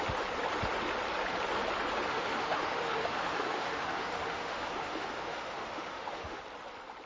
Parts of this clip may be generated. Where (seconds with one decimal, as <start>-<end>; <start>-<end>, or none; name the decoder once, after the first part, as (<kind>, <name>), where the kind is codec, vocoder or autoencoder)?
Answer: 2.1-6.4 (autoencoder, DAC-VAE)